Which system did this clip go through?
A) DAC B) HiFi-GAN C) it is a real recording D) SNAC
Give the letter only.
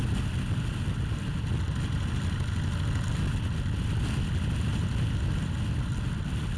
C